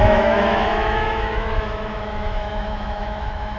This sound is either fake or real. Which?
fake